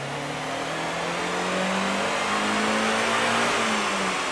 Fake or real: real